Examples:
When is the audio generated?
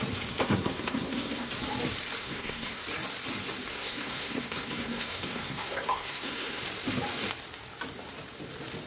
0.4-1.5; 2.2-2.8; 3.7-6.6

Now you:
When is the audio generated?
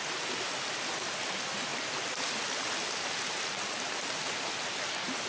none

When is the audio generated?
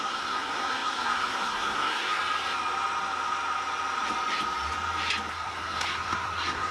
0.0-2.2; 5.3-6.7